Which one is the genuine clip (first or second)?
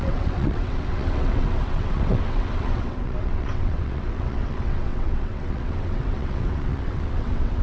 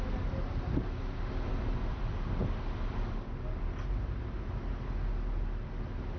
second